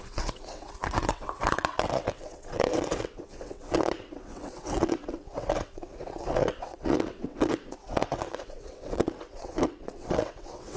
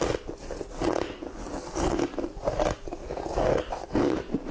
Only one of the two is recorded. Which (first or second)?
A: second